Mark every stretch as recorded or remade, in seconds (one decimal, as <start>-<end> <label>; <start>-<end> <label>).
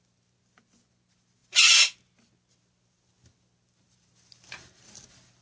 0.0-5.4 recorded